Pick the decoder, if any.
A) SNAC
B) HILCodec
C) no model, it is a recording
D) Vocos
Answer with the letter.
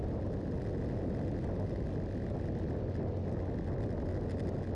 C